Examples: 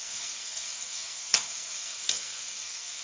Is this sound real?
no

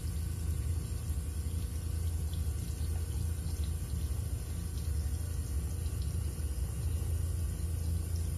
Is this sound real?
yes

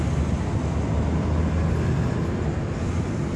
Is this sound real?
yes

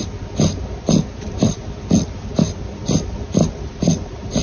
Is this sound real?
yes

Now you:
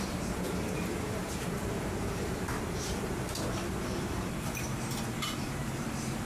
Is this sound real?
no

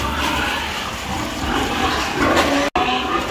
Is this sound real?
yes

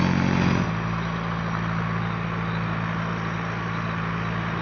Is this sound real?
yes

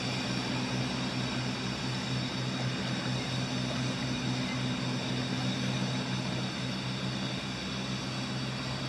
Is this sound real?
yes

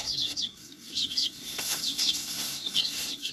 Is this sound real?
no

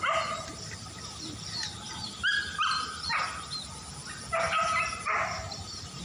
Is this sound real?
yes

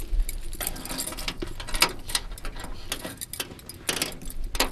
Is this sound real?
yes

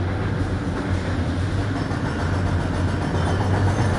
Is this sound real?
yes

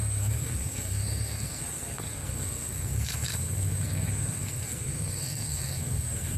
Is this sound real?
no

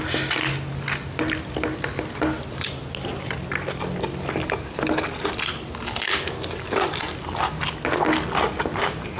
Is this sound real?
yes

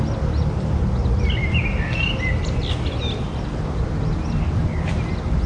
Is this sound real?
yes